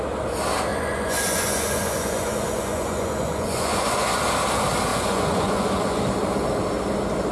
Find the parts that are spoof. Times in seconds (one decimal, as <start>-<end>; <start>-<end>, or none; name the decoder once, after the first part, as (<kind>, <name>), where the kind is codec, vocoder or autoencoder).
0.7-4.2 (vocoder, Vocos); 4.9-6.0